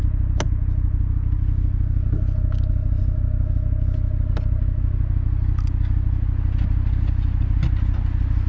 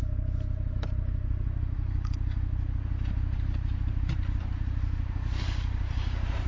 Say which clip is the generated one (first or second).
second